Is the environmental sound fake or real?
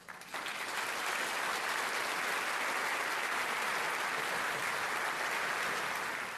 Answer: real